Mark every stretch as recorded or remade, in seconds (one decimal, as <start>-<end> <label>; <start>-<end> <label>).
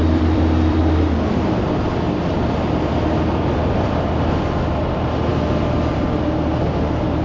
0.0-4.3 remade; 4.3-7.2 recorded